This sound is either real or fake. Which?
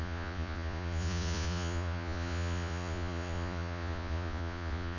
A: fake